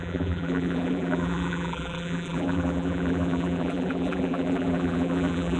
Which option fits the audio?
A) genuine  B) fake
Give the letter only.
B